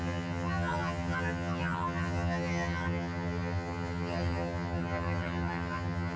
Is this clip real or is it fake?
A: fake